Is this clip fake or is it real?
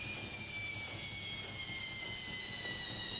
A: real